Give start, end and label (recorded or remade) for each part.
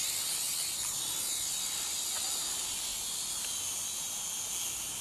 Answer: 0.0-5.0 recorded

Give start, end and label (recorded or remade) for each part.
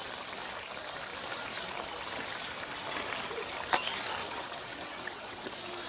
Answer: 0.0-4.2 recorded; 4.2-5.5 remade; 5.5-5.9 recorded